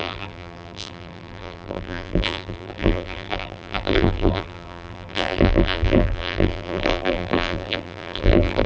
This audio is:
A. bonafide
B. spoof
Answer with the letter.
B